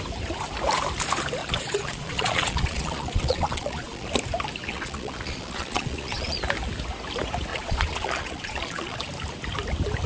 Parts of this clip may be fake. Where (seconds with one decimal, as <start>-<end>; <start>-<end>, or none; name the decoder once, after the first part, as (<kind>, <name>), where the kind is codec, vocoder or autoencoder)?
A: 1.4-4.1 (vocoder, Vocos); 4.6-6.4; 7.5-9.0